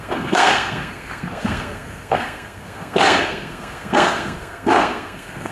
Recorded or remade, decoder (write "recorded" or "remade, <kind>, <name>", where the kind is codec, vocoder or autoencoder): remade, codec, SNAC